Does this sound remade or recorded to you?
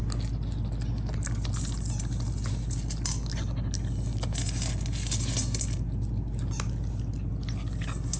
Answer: recorded